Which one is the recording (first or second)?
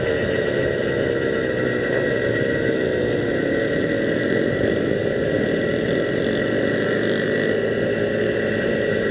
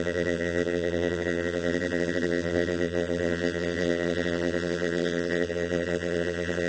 first